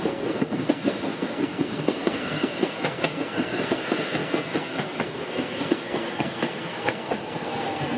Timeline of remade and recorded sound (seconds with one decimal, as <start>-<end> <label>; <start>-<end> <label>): 0.0-8.0 remade